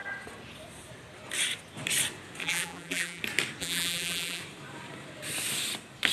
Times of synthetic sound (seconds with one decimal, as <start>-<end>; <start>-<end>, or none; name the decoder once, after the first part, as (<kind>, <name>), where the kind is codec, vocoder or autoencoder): 2.4-3.2 (vocoder, BigVGAN v2); 3.6-4.4